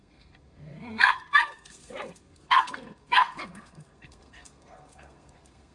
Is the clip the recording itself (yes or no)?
no